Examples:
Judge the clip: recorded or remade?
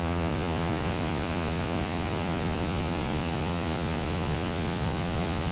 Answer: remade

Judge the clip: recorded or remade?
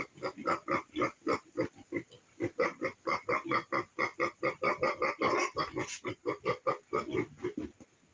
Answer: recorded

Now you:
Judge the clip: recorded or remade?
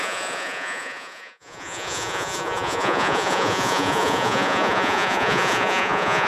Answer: remade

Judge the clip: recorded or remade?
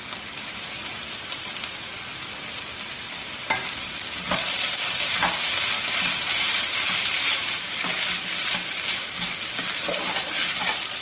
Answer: recorded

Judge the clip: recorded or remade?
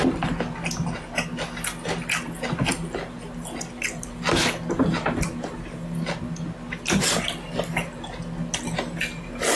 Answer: recorded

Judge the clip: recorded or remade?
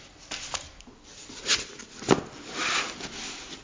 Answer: recorded